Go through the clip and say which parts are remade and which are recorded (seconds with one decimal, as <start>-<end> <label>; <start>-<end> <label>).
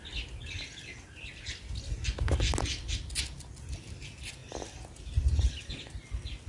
0.0-6.5 recorded